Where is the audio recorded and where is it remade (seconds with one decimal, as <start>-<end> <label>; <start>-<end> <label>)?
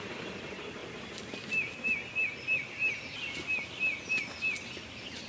0.0-5.3 recorded